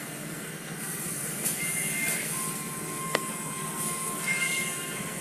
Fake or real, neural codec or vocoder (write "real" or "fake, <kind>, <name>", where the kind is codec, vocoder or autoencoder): fake, codec, SNAC